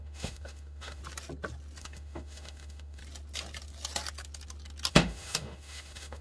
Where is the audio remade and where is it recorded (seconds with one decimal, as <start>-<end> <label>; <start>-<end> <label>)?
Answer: 0.0-1.0 remade; 1.0-1.8 recorded; 1.8-3.0 remade; 3.0-4.9 recorded; 4.9-6.2 remade